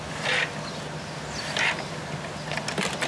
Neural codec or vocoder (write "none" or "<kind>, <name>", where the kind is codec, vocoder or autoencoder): none